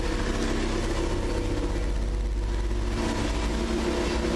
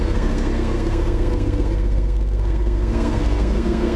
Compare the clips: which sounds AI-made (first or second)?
second